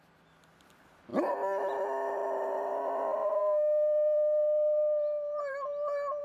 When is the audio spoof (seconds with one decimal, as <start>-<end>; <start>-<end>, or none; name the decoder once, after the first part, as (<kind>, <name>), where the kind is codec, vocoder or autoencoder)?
2.2-6.2 (vocoder, BigVGAN v2)